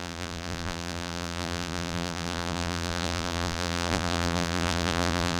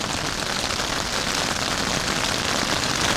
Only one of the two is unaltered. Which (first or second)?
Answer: second